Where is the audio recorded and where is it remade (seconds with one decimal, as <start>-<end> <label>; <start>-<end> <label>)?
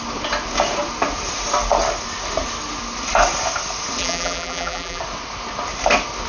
0.0-4.0 recorded; 4.0-5.0 remade; 5.0-6.3 recorded